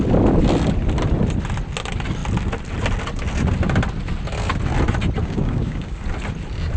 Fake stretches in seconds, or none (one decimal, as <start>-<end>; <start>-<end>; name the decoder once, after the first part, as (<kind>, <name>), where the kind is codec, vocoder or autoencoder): 5.2-6.0 (codec, DAC)